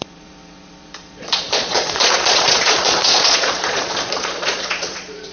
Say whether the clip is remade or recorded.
remade